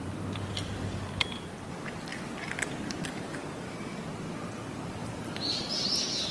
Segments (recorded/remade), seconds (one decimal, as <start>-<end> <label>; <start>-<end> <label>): 0.0-6.3 recorded